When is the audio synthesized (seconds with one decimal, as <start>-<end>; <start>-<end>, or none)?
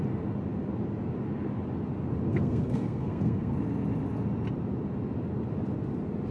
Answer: 2.3-3.5